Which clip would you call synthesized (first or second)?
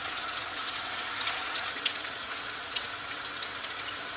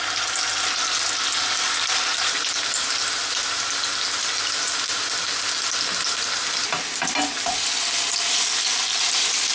first